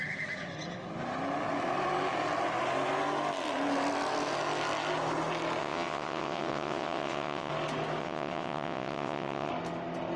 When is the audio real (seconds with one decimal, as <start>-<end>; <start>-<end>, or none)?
0.0-5.6; 7.5-8.0; 9.5-10.2